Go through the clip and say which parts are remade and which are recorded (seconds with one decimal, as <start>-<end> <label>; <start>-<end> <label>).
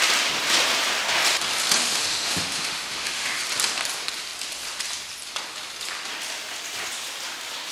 0.0-1.8 recorded; 1.8-3.4 remade; 3.4-7.7 recorded